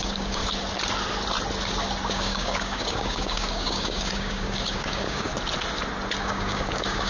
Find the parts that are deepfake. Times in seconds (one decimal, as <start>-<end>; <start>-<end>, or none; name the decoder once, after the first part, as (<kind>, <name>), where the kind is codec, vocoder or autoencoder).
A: 0.0-0.4 (codec, DAC); 2.1-5.3; 6.2-7.1